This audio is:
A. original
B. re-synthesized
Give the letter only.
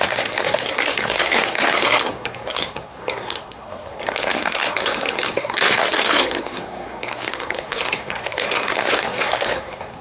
B